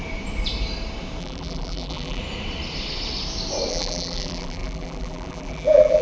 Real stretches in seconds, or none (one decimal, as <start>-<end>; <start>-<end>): 0.0-1.2; 2.2-3.7